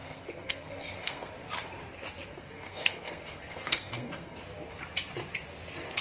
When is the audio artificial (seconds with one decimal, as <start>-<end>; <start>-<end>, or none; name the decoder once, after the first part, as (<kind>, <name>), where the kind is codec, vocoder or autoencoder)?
0.0-1.3 (codec, SNAC); 2.3-4.4

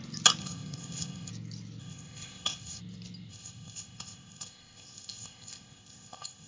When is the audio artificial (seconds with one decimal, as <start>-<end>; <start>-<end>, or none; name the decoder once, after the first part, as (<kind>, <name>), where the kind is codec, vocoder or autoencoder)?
0.4-1.3 (codec, ZipCodec); 1.8-2.8; 3.3-6.5

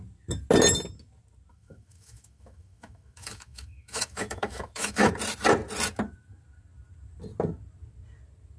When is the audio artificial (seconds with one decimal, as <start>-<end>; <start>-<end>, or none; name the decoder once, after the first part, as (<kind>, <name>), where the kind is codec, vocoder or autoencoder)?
1.5-5.1 (autoencoder, DAC-VAE)

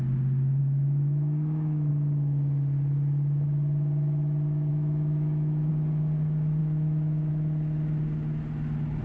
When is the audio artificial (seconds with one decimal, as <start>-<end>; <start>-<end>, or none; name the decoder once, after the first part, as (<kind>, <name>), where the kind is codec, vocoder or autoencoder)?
0.6-1.9 (autoencoder, DAC-VAE); 4.7-5.7; 6.6-7.3

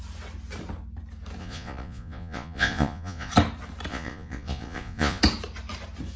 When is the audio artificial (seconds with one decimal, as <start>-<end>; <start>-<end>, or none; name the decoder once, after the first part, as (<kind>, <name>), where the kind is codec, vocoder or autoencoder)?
1.4-3.3 (vocoder, Vocos); 3.9-5.2